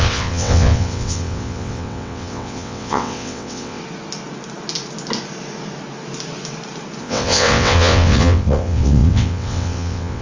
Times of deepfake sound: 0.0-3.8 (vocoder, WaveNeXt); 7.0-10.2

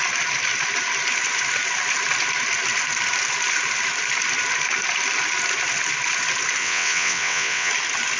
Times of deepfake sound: 6.6-7.7 (vocoder, WaveNeXt)

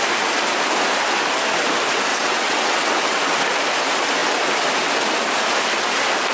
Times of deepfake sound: 2.1-3.2 (vocoder, WaveNeXt)

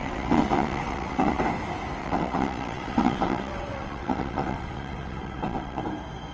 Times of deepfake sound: 0.0-1.4 (vocoder, WaveNeXt); 2.0-5.8

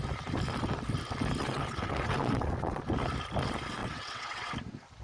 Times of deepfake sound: 1.4-2.8 (vocoder, WaveNeXt); 3.8-4.5

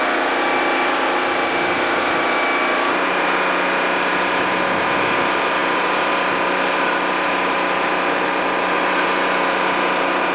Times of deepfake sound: none